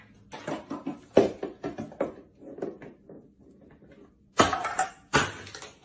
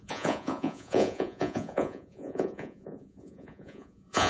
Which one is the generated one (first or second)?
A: second